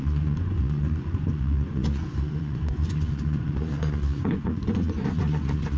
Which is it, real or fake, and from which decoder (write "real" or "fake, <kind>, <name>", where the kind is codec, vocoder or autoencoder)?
fake, vocoder, Vocos